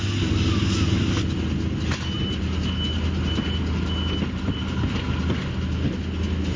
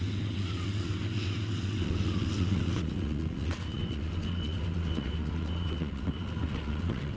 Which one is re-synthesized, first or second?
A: second